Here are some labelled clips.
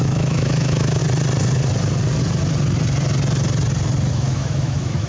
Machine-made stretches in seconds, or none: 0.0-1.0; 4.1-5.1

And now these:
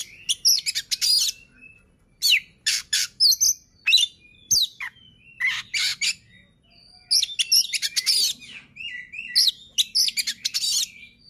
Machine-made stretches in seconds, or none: none

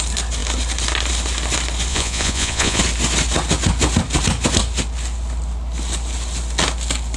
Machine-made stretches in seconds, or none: 1.9-2.8

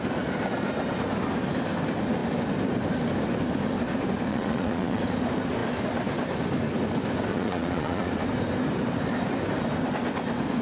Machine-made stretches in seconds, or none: 4.3-5.0; 7.3-8.1